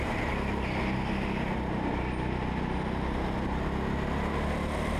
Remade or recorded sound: recorded